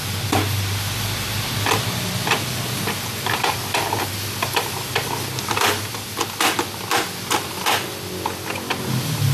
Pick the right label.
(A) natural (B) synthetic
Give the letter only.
A